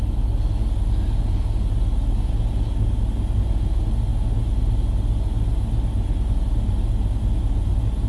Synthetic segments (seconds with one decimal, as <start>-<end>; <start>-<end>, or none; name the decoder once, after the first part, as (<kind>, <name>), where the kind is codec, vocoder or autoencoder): none